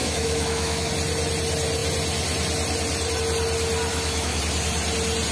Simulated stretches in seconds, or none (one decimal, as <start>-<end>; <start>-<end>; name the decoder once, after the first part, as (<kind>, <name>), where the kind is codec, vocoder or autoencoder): 0.0-0.9 (autoencoder, DAC-VAE); 3.9-4.4